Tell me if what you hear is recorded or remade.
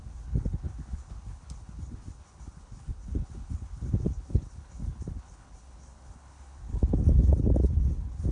remade